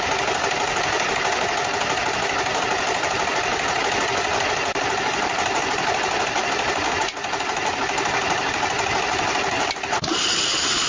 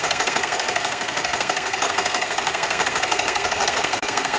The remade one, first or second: second